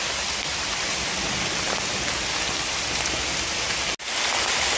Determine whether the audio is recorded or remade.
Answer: recorded